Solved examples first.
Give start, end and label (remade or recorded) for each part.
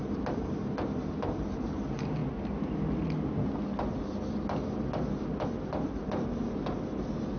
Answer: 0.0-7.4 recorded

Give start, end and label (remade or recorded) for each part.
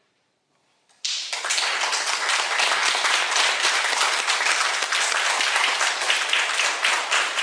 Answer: 0.0-7.4 recorded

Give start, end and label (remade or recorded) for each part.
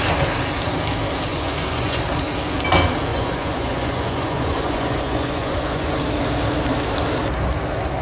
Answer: 0.0-1.3 recorded; 1.3-2.0 remade; 2.0-3.1 recorded; 3.1-6.0 remade; 6.0-8.0 recorded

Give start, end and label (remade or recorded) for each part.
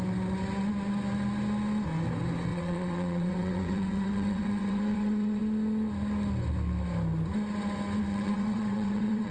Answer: 0.0-2.5 recorded; 2.5-5.4 remade; 5.4-8.1 recorded; 8.1-9.3 remade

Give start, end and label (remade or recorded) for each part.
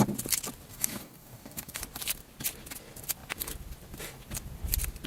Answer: 0.0-0.7 recorded; 0.7-1.8 remade; 1.8-5.1 recorded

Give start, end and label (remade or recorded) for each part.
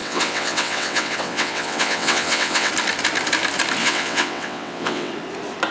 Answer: 0.0-2.7 remade; 2.7-3.8 recorded; 3.8-5.1 remade; 5.1-5.7 recorded